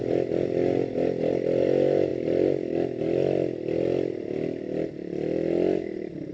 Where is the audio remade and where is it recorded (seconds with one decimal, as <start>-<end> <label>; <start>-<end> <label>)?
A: 0.0-6.3 recorded